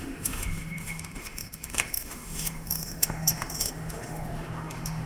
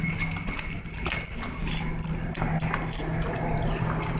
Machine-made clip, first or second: first